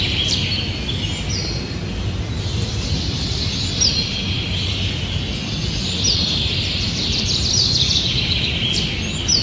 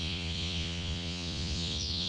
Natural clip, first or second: first